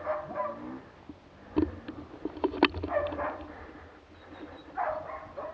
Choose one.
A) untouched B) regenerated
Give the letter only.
A